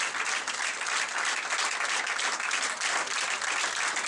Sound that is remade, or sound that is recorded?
recorded